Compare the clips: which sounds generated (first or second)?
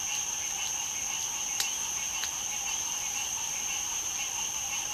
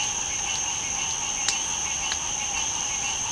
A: first